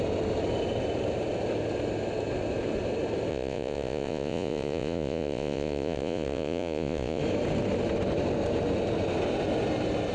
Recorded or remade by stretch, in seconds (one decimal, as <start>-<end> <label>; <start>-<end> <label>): 0.0-3.3 recorded; 3.3-7.2 remade; 7.2-10.1 recorded